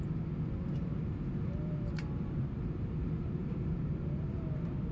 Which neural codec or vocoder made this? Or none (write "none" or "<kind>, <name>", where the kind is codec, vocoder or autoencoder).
vocoder, BigVGAN v2